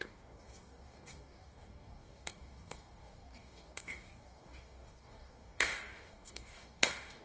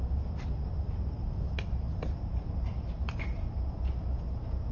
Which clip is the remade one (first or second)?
first